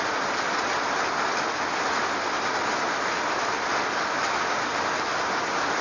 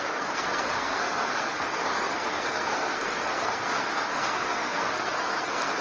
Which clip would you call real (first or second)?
first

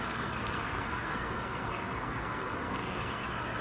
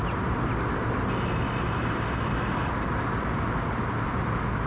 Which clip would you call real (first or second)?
second